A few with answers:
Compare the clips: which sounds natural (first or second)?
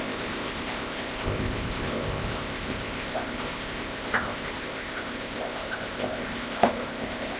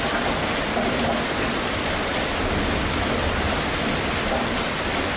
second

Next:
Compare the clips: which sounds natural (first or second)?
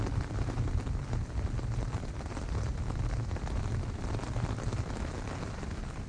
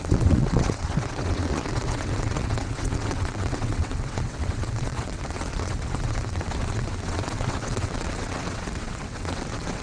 first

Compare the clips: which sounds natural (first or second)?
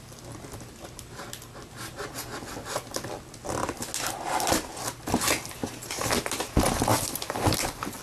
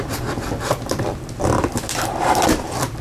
first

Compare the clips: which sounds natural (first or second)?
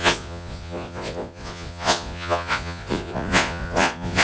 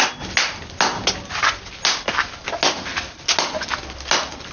second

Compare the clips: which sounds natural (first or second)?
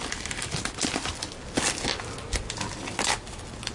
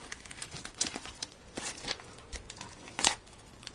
first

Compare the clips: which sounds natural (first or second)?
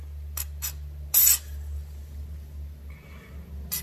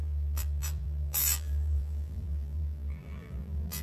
first